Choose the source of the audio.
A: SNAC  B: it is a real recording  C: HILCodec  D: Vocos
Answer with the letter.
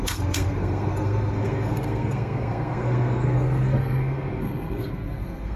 A